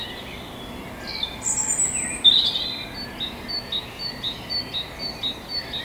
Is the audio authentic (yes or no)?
yes